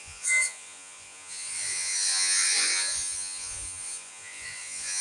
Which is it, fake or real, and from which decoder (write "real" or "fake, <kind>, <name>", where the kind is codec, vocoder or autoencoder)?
fake, vocoder, Vocos